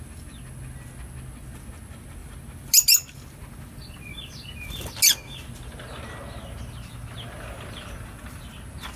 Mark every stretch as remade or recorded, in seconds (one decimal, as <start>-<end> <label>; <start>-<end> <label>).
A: 0.0-9.0 recorded